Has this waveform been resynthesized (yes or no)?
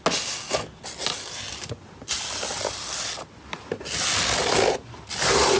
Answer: no